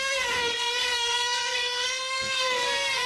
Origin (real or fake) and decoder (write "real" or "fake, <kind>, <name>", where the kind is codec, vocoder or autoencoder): fake, codec, SNAC